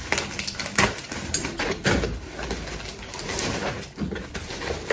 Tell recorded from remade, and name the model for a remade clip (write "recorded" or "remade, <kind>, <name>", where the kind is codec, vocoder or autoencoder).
recorded